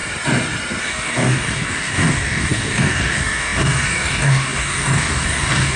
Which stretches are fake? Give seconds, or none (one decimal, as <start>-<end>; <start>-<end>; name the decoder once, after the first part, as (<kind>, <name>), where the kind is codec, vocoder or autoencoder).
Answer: 0.8-5.8 (codec, DAC)